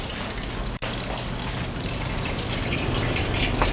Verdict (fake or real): real